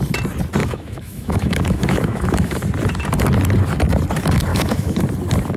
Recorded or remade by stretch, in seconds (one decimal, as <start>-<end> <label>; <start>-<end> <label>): 0.0-0.6 recorded; 0.6-2.6 remade; 2.6-4.5 recorded; 4.5-5.0 remade; 5.0-5.6 recorded